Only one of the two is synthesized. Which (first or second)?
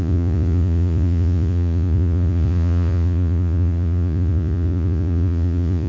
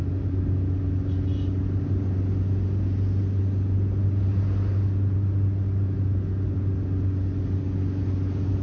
first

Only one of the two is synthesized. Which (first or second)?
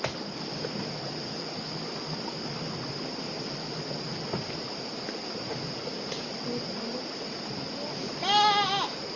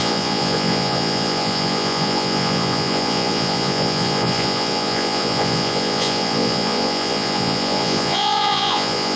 second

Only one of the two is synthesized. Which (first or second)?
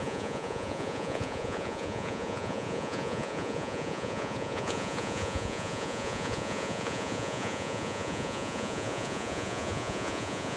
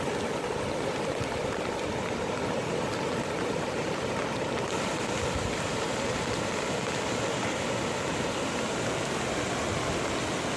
first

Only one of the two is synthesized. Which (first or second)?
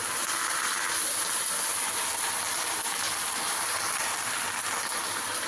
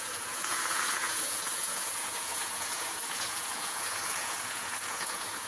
second